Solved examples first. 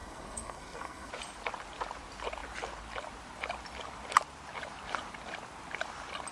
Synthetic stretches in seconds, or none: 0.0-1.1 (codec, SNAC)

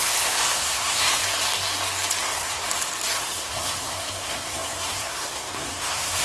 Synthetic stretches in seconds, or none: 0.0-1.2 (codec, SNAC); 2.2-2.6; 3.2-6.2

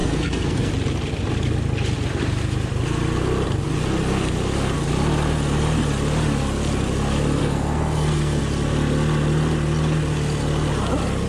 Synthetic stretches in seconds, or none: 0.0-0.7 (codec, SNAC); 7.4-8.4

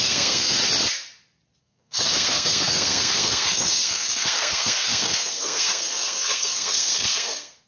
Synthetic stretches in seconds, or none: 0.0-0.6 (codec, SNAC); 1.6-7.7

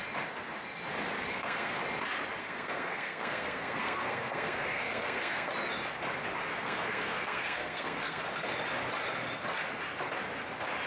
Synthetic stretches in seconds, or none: 1.3-1.8 (codec, SNAC); 2.4-5.5; 6.5-8.2

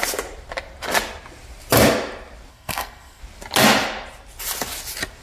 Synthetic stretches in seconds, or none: 2.5-3.2 (codec, SNAC)